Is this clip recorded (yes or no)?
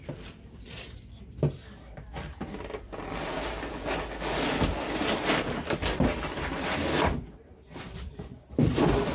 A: yes